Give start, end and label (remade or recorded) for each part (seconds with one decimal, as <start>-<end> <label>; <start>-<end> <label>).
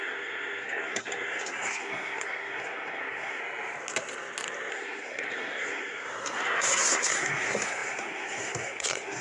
0.0-3.4 remade; 3.4-4.7 recorded; 4.7-9.2 remade